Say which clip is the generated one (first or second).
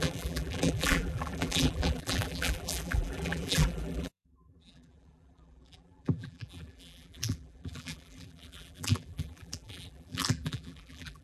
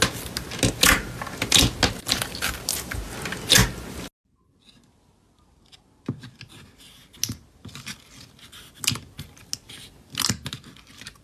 first